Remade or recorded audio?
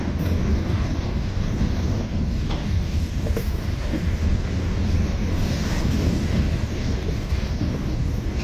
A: remade